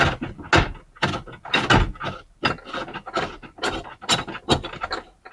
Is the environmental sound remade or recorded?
recorded